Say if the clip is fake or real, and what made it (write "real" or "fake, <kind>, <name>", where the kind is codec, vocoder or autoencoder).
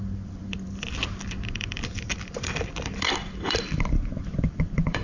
fake, vocoder, BigVGAN v2